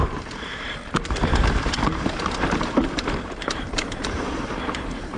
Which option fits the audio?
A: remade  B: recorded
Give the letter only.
A